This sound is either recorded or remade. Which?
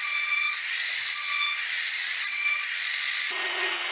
remade